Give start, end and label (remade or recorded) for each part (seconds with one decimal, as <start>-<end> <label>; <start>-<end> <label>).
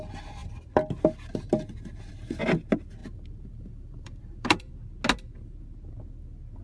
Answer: 0.0-3.0 recorded; 3.0-4.7 remade; 4.7-6.6 recorded